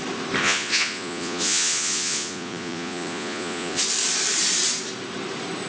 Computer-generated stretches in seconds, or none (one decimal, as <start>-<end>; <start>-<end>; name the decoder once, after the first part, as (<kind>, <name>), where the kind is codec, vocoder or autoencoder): 0.4-3.8 (vocoder, Vocos)